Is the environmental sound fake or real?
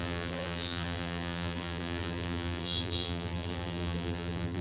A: fake